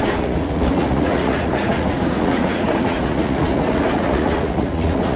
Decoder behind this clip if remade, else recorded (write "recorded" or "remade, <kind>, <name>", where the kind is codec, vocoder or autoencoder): remade, vocoder, Vocos